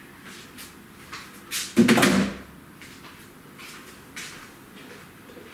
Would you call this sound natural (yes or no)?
no